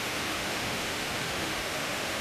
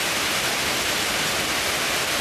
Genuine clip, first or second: second